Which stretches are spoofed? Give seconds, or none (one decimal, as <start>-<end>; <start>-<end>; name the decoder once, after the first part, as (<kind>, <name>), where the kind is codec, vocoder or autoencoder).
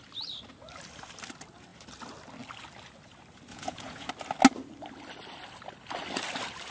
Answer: 3.5-4.1 (vocoder, Vocos)